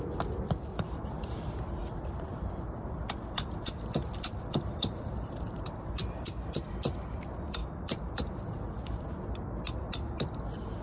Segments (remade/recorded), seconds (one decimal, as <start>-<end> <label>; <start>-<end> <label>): 0.0-0.7 recorded; 0.7-1.4 remade; 1.4-1.8 recorded; 1.8-6.0 remade; 6.0-7.6 recorded; 7.6-9.2 remade; 9.2-10.8 recorded